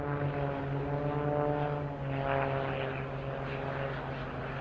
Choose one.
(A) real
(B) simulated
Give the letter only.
A